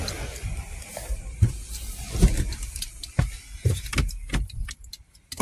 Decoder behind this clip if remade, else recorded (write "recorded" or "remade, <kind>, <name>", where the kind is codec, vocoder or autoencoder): recorded